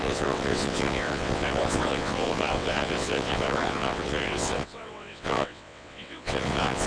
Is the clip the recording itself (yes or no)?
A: no